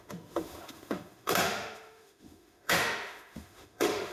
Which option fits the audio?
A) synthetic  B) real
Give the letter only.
A